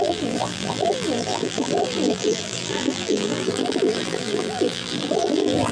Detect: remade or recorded remade